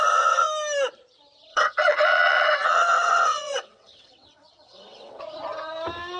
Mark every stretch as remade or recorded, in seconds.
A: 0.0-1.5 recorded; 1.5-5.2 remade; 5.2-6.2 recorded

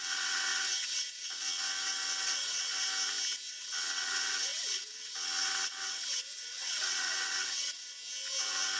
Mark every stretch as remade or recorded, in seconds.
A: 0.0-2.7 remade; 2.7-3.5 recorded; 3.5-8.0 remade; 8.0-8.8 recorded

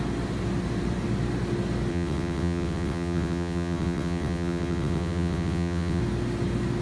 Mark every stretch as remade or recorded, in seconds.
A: 0.0-1.9 recorded; 1.9-6.0 remade; 6.0-6.8 recorded

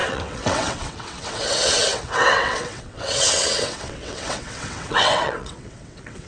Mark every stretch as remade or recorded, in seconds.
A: 0.0-6.3 remade